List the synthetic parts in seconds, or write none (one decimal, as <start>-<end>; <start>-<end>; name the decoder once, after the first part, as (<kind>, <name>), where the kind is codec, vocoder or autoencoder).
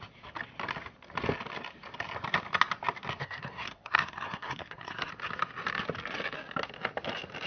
3.2-5.1 (codec, SNAC)